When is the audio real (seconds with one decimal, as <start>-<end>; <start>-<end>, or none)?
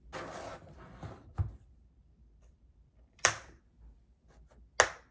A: 0.0-0.5; 3.6-5.1